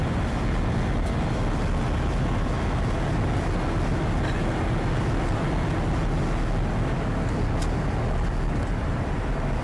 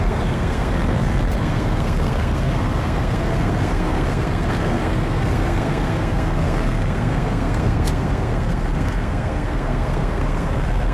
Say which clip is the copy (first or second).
second